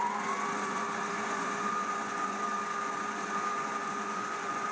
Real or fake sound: fake